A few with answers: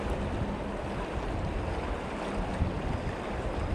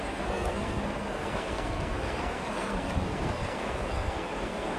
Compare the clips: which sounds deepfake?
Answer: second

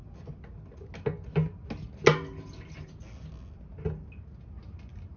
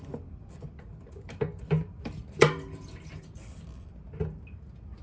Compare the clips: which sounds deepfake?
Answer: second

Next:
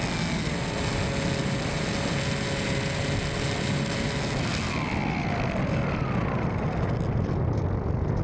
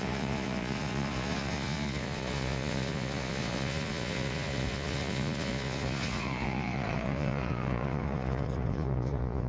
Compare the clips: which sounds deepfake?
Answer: second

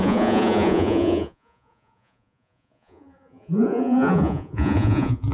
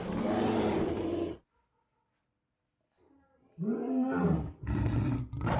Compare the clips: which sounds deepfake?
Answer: first